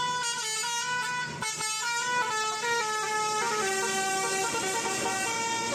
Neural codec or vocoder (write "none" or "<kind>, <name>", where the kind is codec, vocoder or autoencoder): none